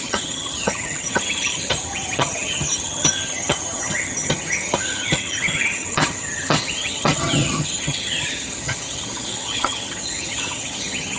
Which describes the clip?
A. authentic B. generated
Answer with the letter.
B